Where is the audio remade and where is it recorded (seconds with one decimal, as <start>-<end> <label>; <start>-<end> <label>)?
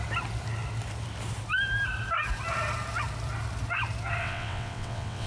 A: 0.0-4.2 recorded; 4.2-5.3 remade